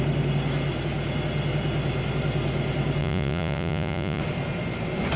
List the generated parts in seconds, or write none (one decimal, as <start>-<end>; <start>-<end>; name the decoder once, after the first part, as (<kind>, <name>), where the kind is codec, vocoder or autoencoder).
3.0-4.2 (vocoder, Vocos)